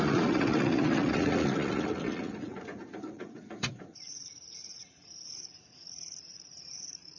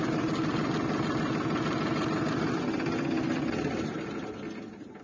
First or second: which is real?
second